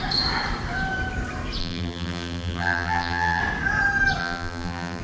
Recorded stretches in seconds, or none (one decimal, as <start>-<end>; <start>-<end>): 0.0-1.6; 3.4-4.2